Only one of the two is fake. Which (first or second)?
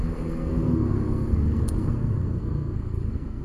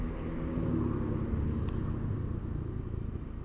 first